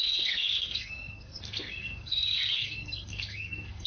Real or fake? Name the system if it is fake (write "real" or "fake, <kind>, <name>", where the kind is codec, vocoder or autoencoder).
fake, codec, SNAC